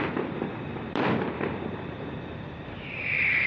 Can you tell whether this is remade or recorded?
remade